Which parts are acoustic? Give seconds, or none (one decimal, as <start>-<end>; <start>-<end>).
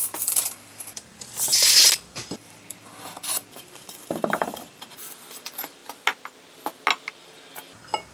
5.8-7.1